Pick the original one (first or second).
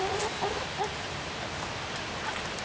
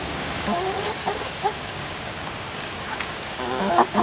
first